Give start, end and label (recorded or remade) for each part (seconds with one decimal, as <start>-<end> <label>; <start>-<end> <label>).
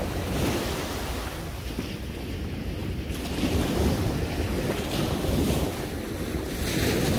0.0-7.2 recorded